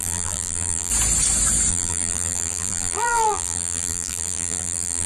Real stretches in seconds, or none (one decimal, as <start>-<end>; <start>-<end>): 0.9-1.7